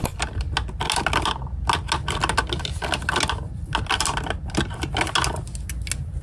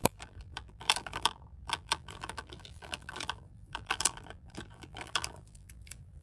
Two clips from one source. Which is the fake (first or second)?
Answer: second